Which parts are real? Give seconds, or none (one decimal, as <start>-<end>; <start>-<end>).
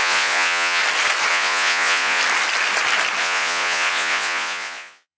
0.8-1.3; 2.2-3.2